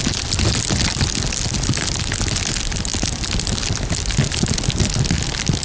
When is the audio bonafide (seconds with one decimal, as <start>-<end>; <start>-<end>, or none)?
0.0-5.6